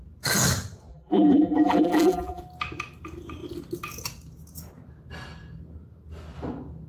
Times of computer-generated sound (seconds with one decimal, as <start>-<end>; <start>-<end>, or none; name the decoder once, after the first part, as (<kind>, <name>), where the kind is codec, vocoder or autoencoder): 0.9-2.4 (vocoder, BigVGAN v2)

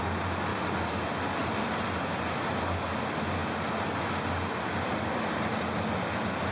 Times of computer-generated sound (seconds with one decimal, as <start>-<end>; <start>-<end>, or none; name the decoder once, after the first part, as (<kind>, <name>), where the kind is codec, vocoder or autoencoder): none

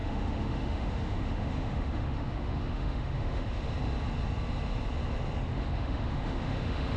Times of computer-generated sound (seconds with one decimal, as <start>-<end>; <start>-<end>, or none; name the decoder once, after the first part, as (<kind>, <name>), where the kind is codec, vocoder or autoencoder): 0.0-3.7 (autoencoder, DAC-VAE); 5.5-7.0